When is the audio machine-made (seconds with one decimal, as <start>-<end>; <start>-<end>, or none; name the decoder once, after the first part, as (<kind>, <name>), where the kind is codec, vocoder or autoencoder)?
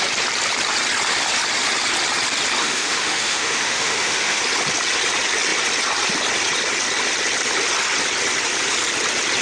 2.6-4.4 (autoencoder, DAC-VAE)